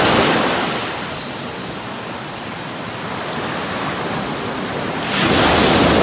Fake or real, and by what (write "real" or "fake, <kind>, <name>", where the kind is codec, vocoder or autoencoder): real